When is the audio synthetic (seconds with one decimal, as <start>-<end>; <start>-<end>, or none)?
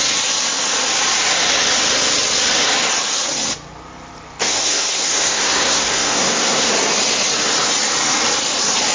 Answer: 4.4-6.7